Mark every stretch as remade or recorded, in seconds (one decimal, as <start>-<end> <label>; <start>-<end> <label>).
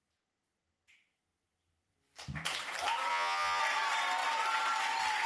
0.0-3.1 recorded; 3.1-3.6 remade; 3.6-5.3 recorded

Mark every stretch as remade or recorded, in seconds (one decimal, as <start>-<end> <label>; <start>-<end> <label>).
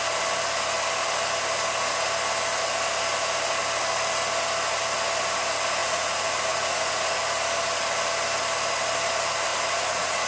0.0-5.8 recorded; 5.8-7.2 remade; 7.2-9.5 recorded; 9.5-10.3 remade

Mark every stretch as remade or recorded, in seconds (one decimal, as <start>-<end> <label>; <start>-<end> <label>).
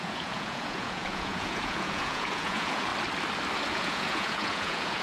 0.0-2.9 remade; 2.9-3.7 recorded; 3.7-5.0 remade